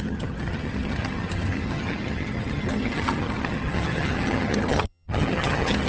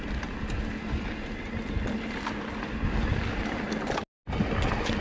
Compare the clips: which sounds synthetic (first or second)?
first